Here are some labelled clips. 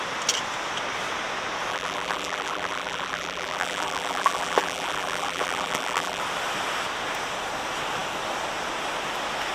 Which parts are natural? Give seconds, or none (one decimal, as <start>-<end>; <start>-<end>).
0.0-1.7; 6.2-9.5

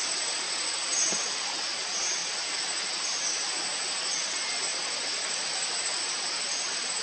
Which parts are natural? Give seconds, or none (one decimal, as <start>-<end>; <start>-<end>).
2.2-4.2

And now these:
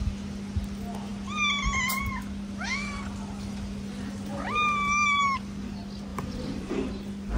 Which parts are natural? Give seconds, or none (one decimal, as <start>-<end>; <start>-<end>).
0.0-4.3; 5.2-6.1; 6.9-7.4

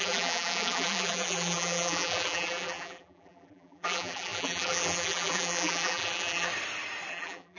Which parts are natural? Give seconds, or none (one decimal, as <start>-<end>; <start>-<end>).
6.5-7.1

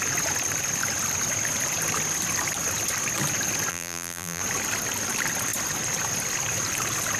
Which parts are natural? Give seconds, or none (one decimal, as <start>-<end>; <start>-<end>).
0.0-3.7; 4.4-7.2